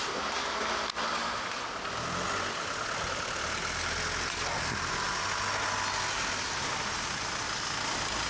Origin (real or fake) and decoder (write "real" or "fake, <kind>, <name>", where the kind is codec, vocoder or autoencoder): real